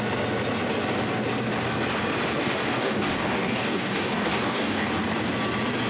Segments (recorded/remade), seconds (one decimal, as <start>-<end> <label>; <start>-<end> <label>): 0.0-2.4 recorded; 2.4-4.9 remade; 4.9-5.9 recorded